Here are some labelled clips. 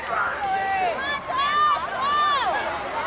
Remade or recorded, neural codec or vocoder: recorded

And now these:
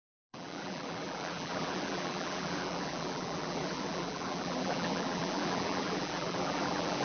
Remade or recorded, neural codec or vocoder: remade, vocoder, BigVGAN v2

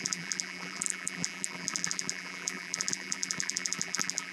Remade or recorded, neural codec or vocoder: remade, vocoder, BigVGAN v2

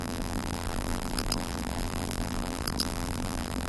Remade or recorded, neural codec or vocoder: remade, vocoder, BigVGAN v2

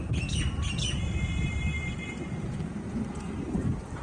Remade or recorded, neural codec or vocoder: recorded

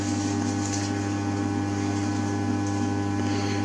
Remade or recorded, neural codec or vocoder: recorded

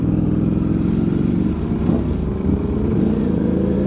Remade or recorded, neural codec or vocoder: remade, vocoder, BigVGAN v2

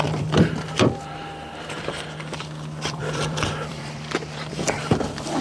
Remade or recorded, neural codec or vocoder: remade, vocoder, BigVGAN v2